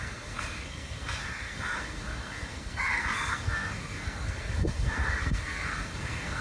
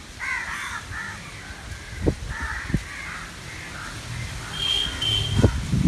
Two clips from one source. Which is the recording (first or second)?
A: second